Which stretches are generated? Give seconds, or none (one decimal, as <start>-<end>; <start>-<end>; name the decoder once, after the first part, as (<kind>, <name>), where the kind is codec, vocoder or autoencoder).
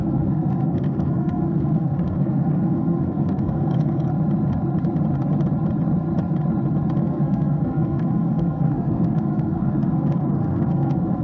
0.0-4.1 (codec, SNAC); 7.0-11.2